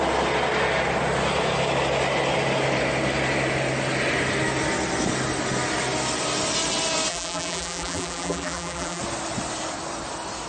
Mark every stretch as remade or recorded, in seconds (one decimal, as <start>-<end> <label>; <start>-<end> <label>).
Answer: 0.0-7.1 recorded; 7.1-9.0 remade; 9.0-10.5 recorded